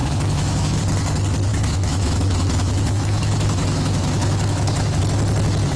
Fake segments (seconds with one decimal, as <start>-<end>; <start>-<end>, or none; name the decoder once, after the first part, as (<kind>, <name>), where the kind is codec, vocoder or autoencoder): 0.0-0.8 (autoencoder, DAC-VAE); 1.5-5.0